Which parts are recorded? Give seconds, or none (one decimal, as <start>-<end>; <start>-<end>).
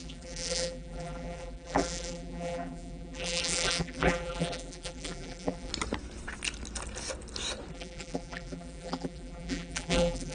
5.7-7.7